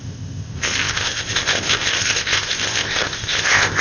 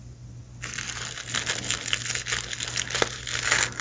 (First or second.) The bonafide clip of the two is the second